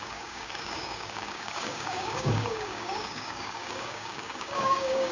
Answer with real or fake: fake